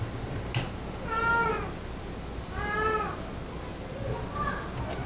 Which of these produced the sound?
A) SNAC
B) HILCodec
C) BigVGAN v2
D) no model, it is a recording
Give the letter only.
D